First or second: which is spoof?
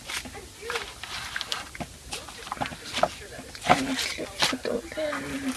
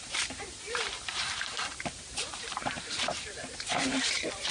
second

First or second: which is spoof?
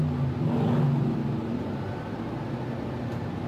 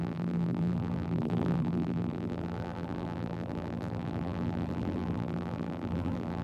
second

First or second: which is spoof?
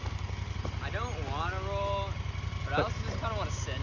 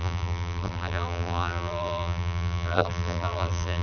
second